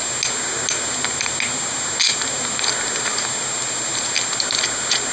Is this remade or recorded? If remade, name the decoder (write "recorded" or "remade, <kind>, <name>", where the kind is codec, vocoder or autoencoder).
recorded